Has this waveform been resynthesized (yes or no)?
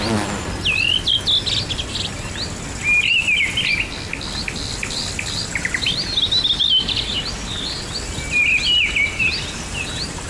no